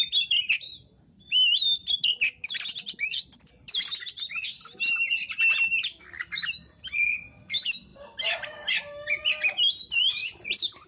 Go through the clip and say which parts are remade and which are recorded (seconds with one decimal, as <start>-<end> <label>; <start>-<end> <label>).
0.0-7.9 recorded; 7.9-8.7 remade; 8.7-10.2 recorded; 10.2-10.9 remade